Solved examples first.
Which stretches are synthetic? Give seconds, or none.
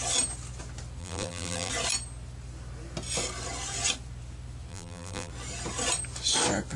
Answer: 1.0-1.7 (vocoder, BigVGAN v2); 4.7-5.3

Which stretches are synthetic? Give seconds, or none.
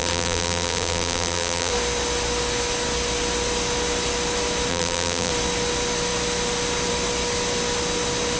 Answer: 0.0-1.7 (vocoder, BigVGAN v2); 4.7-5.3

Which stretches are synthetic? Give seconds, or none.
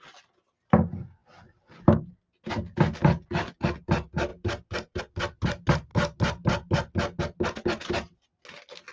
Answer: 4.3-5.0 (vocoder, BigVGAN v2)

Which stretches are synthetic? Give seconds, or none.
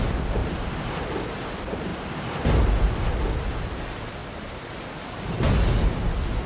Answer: 0.0-1.9 (vocoder, BigVGAN v2); 2.7-4.2; 5.9-6.5